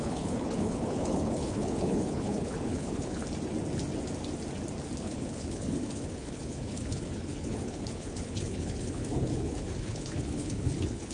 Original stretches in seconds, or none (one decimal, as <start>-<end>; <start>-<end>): 3.2-5.0